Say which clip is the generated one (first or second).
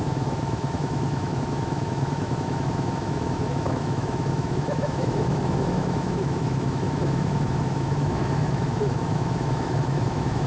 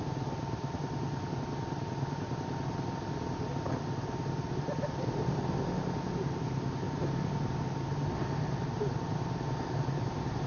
first